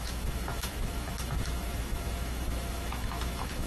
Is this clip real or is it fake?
fake